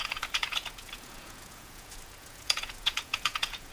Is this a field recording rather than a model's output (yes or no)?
no